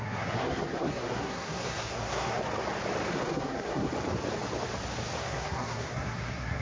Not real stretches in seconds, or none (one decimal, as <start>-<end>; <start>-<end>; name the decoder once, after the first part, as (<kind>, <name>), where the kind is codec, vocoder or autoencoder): 0.0-2.4 (codec, SNAC); 3.1-3.9; 5.2-6.6